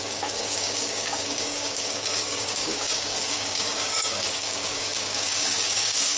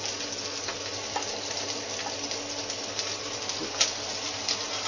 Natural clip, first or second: second